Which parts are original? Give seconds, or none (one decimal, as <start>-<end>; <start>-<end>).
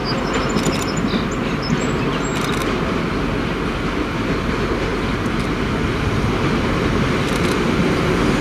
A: 0.0-2.6; 3.1-8.4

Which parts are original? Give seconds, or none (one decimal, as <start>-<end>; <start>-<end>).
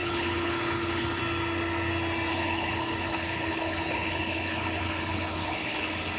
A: 1.2-2.3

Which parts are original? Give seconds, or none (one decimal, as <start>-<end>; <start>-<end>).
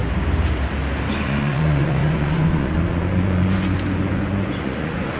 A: 0.0-1.1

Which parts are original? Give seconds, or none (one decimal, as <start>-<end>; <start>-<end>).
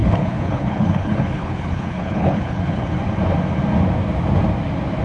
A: 3.0-5.0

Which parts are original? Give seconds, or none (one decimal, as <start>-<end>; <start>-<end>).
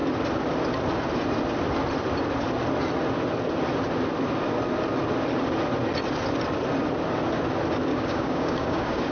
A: 0.0-7.9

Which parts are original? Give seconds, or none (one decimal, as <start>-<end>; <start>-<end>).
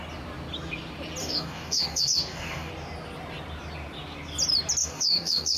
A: 0.0-1.2; 2.7-4.8